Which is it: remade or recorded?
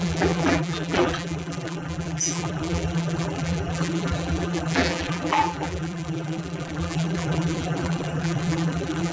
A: remade